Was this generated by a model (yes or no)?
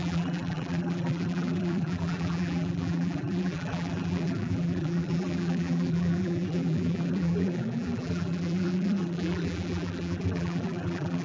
yes